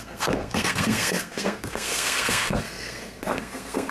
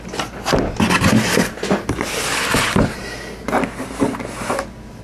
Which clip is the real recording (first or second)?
second